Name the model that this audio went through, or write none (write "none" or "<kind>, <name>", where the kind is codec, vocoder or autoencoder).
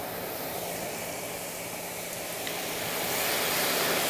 vocoder, BigVGAN v2